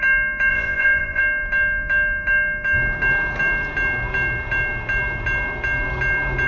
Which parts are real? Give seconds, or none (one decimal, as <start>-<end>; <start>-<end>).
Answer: 0.0-0.5; 1.2-6.5